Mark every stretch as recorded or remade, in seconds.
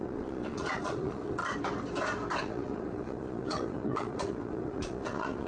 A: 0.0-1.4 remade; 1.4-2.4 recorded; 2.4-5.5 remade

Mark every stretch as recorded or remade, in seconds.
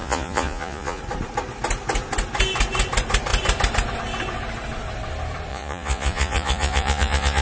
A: 0.0-1.0 remade; 1.0-5.5 recorded; 5.5-7.4 remade